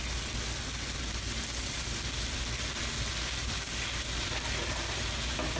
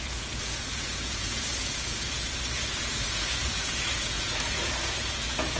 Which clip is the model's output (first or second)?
second